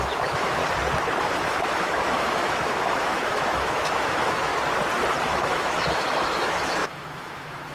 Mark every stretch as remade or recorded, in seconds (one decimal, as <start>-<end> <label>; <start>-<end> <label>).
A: 0.0-0.6 remade; 0.6-1.2 recorded; 1.2-4.5 remade; 4.5-5.2 recorded; 5.2-7.7 remade